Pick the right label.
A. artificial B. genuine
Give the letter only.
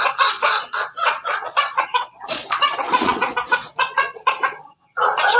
A